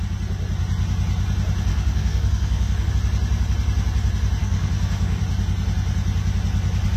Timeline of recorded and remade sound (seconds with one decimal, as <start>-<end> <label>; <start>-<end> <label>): 0.0-1.7 recorded; 1.7-2.9 remade; 2.9-4.4 recorded; 4.4-5.2 remade; 5.2-7.0 recorded